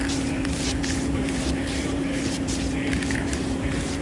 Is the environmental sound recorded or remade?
remade